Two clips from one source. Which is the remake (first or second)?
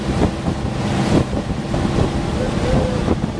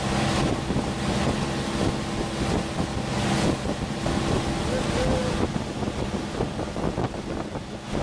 first